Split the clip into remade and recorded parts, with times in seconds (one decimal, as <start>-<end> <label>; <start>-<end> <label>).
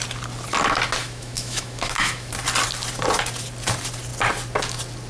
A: 0.0-1.0 recorded; 1.0-2.3 remade; 2.3-5.1 recorded